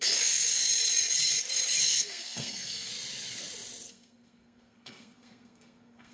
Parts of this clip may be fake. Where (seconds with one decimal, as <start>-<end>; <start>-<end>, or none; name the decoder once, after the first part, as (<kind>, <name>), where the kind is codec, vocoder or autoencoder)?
0.0-0.7 (codec, SNAC); 1.8-2.9; 3.9-6.1